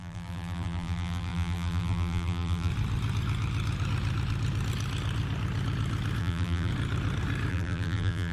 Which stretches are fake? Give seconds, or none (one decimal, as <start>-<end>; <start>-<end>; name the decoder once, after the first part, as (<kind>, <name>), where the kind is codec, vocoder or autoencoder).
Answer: 0.0-2.7 (vocoder, BigVGAN v2); 6.2-6.7; 7.5-8.3